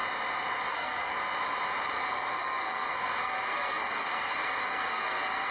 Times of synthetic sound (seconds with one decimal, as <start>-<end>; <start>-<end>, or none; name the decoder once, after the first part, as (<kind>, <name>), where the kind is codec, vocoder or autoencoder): 0.7-1.1 (codec, SNAC); 2.3-5.5